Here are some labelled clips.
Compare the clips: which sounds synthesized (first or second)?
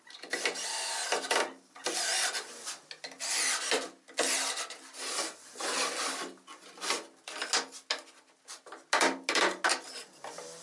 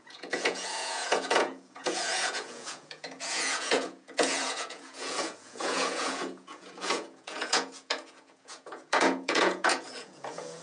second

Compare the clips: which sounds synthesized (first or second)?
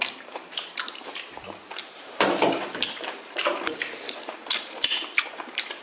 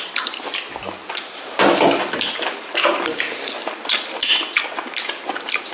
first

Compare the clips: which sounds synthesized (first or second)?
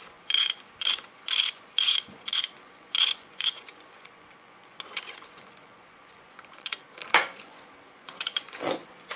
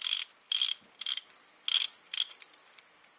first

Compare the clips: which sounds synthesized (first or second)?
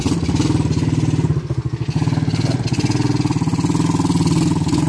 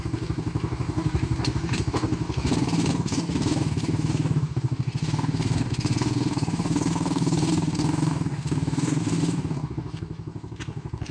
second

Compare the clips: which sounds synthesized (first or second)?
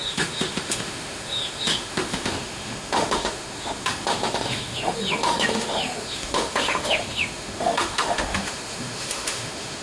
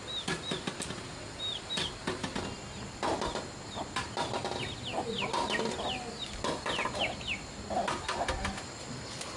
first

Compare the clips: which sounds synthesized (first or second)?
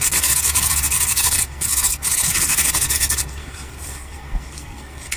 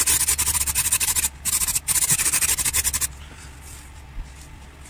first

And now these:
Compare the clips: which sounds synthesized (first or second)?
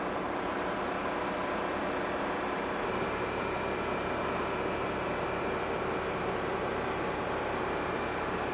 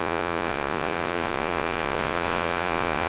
second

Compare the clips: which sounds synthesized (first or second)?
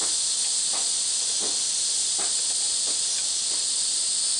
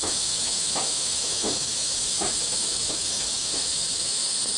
second